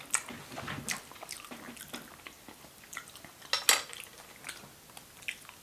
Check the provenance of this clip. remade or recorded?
recorded